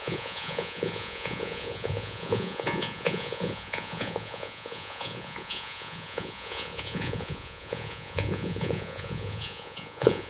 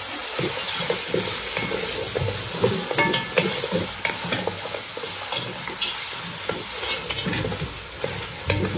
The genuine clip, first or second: second